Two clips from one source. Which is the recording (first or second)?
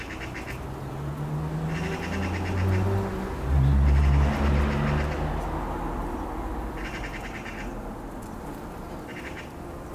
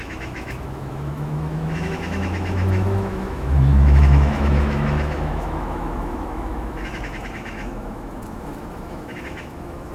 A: first